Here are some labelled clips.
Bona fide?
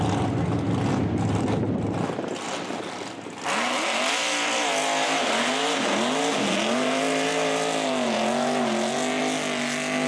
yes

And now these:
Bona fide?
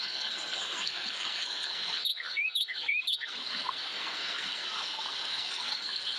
no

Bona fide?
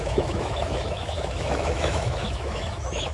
no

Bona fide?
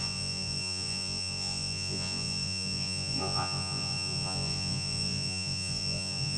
no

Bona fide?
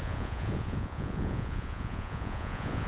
no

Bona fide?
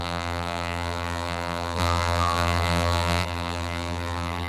no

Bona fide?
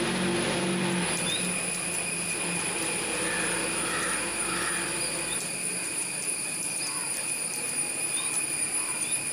yes